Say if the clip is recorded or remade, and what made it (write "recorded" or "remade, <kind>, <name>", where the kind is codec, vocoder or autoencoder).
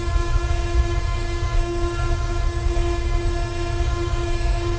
remade, codec, SNAC